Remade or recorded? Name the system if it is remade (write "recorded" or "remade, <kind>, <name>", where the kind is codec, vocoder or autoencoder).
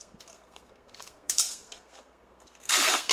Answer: remade, codec, SNAC